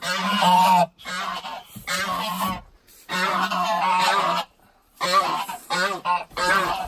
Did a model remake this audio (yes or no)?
yes